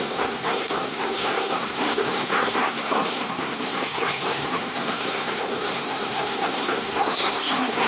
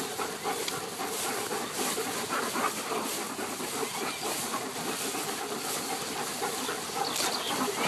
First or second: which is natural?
second